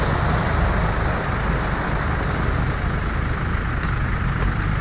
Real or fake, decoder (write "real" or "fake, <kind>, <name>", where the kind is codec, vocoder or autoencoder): real